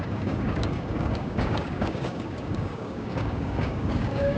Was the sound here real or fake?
fake